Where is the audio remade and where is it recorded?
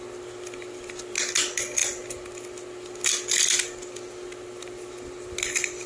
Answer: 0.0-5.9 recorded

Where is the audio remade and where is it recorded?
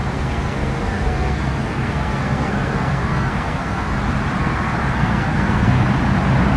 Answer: 0.0-4.0 remade; 4.0-4.4 recorded; 4.4-5.9 remade; 5.9-6.6 recorded